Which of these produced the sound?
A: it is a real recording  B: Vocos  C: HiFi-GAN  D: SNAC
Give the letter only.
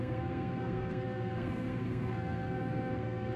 D